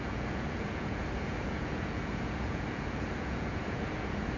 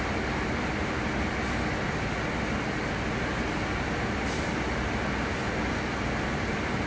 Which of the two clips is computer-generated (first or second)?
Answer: first